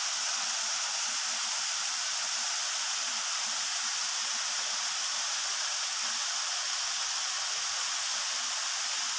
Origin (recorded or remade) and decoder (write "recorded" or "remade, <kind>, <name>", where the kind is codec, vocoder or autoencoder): recorded